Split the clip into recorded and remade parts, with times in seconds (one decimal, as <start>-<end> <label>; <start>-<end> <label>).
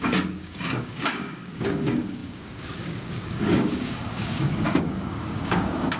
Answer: 0.0-6.0 remade